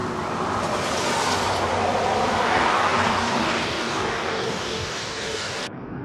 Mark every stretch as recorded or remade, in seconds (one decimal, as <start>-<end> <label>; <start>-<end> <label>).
0.0-2.4 recorded; 2.4-6.0 remade